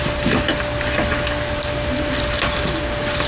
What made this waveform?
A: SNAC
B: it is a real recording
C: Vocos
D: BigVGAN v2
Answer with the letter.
B